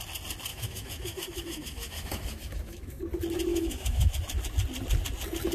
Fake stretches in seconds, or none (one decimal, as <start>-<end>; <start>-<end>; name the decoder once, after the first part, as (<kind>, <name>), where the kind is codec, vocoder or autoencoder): 0.5-3.0 (autoencoder, DAC-VAE); 3.5-4.1